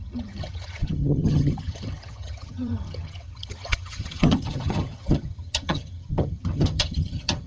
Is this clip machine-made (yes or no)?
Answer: yes